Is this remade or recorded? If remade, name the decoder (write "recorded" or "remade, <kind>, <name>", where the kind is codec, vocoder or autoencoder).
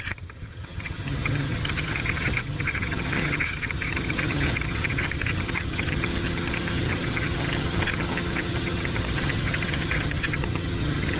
remade, vocoder, HiFi-GAN